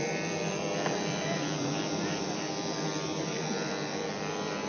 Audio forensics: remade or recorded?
remade